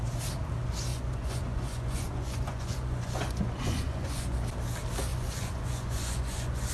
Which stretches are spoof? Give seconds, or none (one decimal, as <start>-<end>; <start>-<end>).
0.9-4.4; 5.1-6.7